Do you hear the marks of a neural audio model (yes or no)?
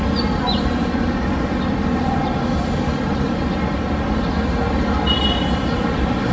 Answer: no